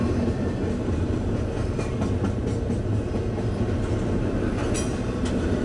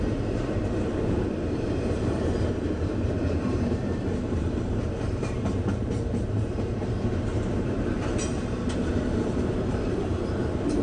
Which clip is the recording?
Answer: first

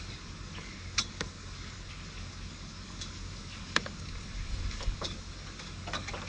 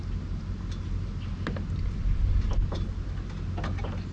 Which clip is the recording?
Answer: second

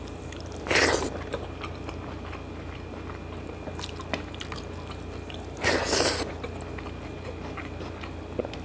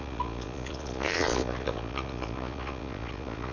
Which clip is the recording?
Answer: first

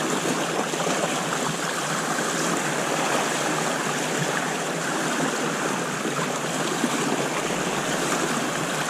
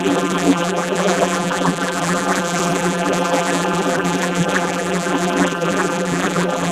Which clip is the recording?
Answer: first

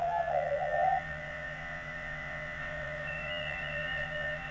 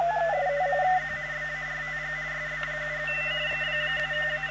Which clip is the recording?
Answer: second